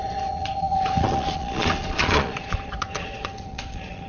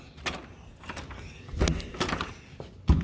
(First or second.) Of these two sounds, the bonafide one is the second